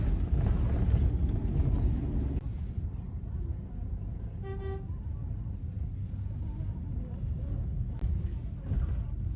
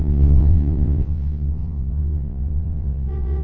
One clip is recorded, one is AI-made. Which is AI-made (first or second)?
second